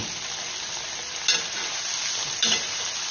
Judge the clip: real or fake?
real